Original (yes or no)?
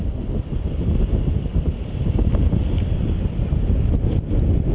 yes